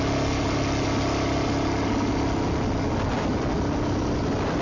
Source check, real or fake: real